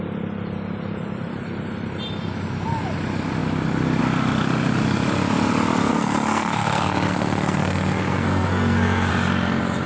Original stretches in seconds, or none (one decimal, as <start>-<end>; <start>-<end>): 0.0-5.9; 9.1-9.9